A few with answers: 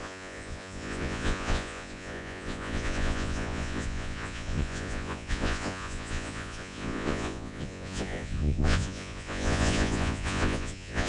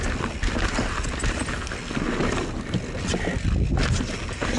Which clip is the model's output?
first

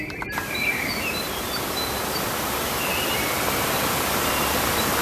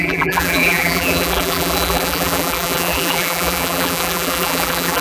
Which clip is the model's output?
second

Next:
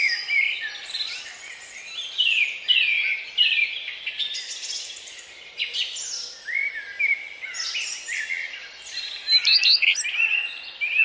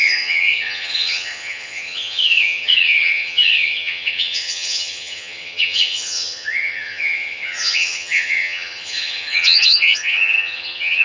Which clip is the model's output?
second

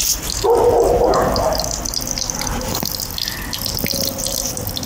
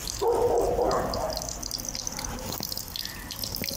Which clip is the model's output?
second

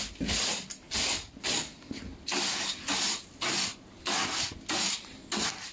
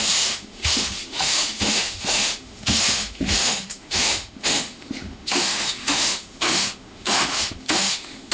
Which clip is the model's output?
second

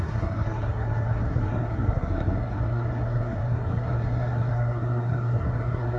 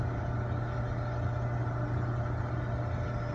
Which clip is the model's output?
first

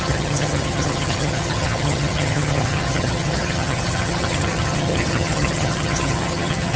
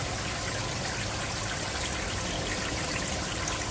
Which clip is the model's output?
first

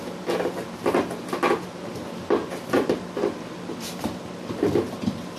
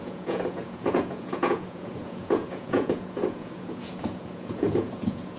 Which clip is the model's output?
second